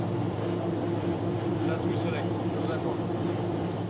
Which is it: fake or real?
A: fake